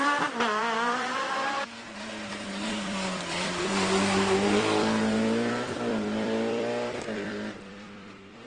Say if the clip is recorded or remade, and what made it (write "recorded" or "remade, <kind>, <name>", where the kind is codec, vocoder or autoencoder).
remade, vocoder, BigVGAN v2